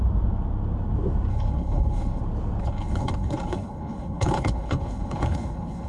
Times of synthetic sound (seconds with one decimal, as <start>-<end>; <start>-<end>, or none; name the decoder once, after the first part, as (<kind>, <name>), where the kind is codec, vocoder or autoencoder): 1.3-2.2 (codec, HILCodec); 2.6-5.9